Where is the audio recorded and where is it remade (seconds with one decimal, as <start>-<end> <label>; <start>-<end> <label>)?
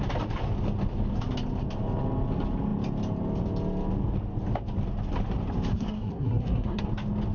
0.0-5.7 recorded; 5.7-6.8 remade; 6.8-7.3 recorded